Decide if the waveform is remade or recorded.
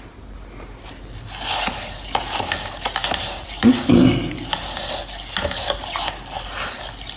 recorded